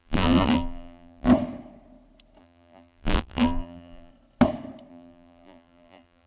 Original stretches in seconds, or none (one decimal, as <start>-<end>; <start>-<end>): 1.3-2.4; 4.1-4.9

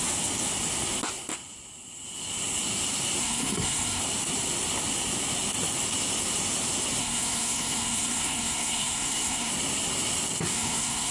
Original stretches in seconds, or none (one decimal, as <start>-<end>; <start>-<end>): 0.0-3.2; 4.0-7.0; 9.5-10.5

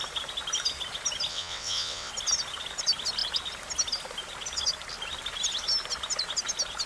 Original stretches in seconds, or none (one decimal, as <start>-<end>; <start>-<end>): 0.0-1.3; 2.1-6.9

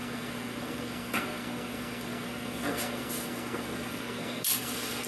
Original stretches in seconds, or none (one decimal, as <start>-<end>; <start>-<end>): none

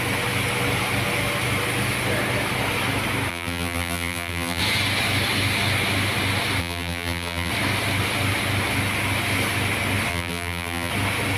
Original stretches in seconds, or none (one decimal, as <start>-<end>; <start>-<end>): 0.0-3.3; 4.6-6.6; 7.5-10.1; 10.9-11.4

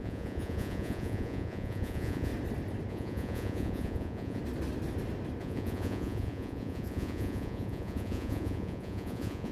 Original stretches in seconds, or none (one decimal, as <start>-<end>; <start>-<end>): 2.3-2.9; 4.4-5.4

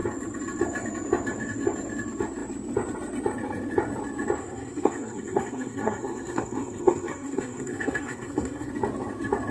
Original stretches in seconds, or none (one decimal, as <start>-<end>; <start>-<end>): 0.0-4.4; 8.7-9.5